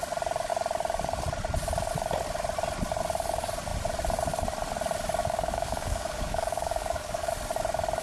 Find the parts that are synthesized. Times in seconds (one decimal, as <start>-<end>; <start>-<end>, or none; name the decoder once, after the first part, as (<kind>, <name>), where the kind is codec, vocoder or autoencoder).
5.2-7.3 (codec, DAC)

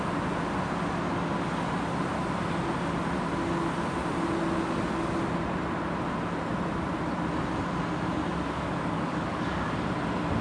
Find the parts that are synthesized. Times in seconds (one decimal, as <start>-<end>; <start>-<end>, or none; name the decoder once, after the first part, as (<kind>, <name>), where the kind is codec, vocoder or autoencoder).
8.3-9.7 (codec, DAC)

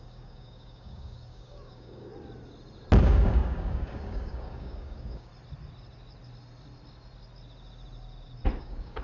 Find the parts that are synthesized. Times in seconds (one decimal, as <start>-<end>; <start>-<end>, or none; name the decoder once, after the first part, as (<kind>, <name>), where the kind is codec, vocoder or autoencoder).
0.0-2.1 (codec, DAC); 3.0-5.3; 8.6-9.0

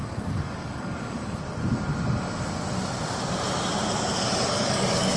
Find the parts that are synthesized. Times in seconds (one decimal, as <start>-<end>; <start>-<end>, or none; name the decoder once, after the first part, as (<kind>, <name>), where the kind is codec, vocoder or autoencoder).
0.0-1.4 (codec, DAC); 4.5-5.2

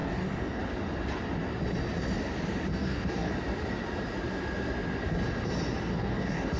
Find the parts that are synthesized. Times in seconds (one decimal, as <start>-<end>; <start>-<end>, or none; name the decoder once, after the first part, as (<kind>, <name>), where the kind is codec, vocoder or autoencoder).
0.0-0.6 (codec, DAC); 2.7-3.3; 5.9-6.6

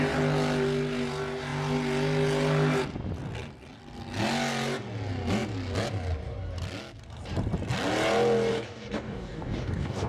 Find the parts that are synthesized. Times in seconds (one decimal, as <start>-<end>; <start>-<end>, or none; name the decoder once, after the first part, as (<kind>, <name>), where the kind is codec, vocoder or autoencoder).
8.5-10.1 (codec, DAC)

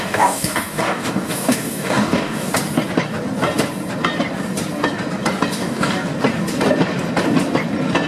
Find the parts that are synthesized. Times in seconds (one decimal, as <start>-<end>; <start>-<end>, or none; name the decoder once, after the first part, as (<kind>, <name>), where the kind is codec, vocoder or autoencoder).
0.0-2.5 (codec, DAC); 5.5-6.1

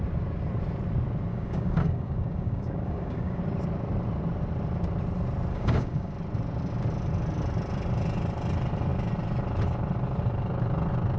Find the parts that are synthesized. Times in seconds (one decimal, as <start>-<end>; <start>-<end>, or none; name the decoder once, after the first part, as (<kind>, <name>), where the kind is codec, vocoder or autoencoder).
1.3-3.4 (codec, DAC); 5.5-6.1